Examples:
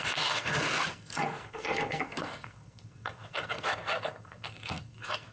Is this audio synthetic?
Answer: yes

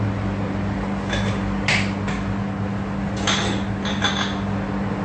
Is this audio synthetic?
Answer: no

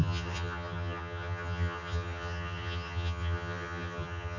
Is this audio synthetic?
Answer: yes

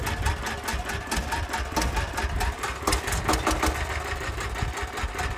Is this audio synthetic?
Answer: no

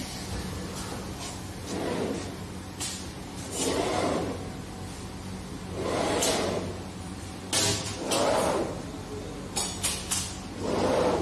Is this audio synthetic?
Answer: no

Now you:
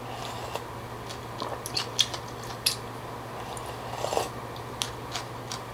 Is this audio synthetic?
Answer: no